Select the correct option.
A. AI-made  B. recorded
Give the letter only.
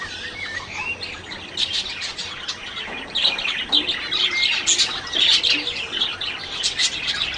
B